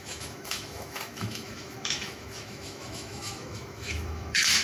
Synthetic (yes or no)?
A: yes